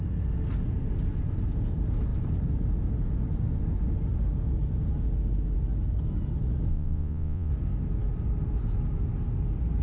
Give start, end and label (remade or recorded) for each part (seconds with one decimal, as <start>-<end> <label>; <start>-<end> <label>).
0.0-6.7 recorded; 6.7-7.5 remade; 7.5-9.8 recorded